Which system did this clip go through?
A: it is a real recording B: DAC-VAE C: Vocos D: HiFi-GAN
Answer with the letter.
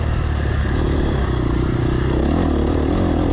A